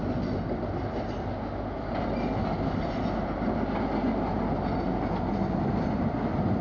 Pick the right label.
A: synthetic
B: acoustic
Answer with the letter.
B